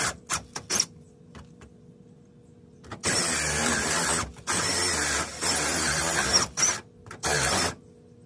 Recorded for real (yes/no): yes